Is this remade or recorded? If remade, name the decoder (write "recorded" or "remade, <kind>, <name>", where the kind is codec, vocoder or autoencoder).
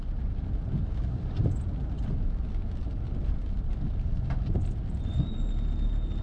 recorded